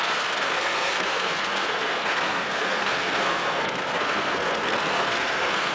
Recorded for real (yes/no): no